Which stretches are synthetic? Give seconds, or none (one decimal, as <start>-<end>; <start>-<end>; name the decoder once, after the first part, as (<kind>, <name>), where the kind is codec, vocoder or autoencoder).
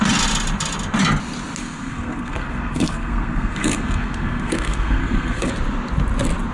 1.6-5.5 (codec, SNAC)